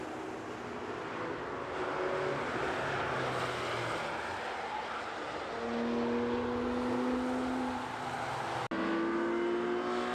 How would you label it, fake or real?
real